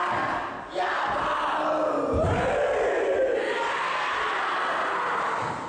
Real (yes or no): yes